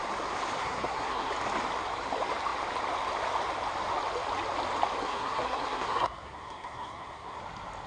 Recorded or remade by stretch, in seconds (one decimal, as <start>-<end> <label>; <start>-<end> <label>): 0.0-0.6 recorded; 0.6-1.3 remade; 1.3-5.0 recorded; 5.0-7.4 remade; 7.4-7.9 recorded